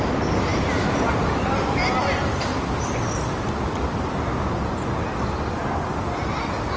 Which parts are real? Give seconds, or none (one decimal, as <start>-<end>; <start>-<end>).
0.0-6.8